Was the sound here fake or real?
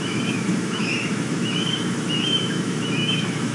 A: fake